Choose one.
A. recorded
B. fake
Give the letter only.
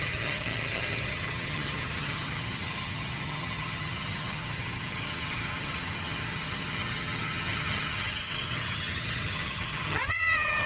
B